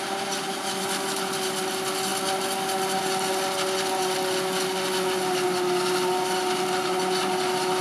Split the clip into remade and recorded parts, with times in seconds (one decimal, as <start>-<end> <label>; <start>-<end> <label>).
0.0-7.8 recorded